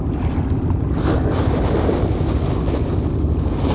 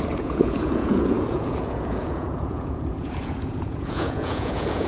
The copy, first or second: second